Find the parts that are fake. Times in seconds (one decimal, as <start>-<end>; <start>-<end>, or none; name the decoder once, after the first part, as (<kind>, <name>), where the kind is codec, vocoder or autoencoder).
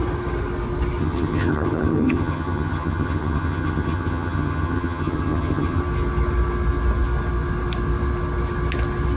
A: 1.0-5.8 (vocoder, HiFi-GAN)